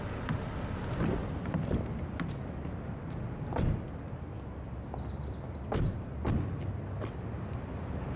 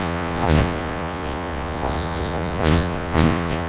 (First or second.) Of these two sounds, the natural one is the first